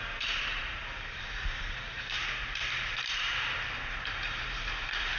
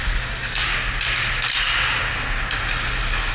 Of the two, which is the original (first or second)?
second